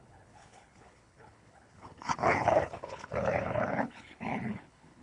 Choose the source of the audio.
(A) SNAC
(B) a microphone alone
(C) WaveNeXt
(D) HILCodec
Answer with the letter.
D